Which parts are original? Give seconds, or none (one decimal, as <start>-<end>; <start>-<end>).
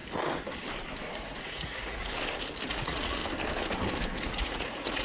0.0-1.1; 2.0-2.7; 3.2-4.3